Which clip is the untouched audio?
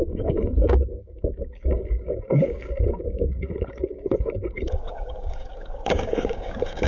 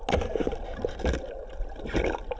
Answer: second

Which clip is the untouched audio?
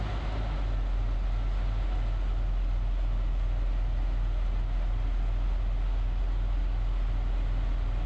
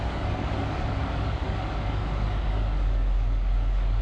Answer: first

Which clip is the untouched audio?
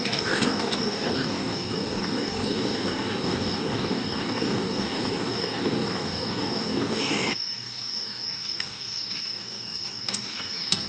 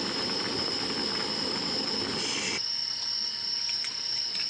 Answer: second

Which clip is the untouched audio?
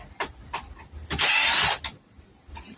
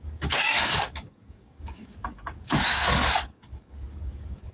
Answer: first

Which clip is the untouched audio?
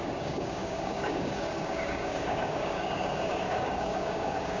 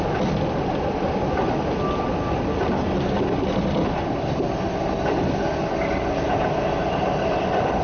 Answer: second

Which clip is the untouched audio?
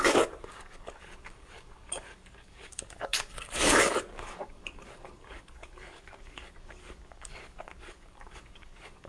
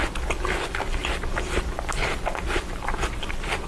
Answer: second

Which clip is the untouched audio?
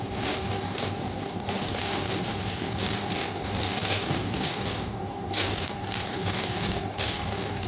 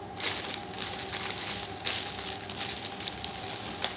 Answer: second